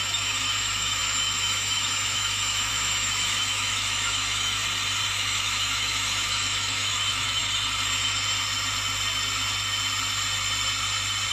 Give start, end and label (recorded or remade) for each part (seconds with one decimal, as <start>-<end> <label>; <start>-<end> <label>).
0.0-4.6 remade; 4.6-5.1 recorded; 5.1-7.4 remade; 7.4-11.3 recorded